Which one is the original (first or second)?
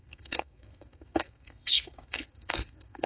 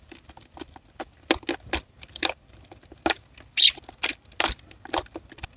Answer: second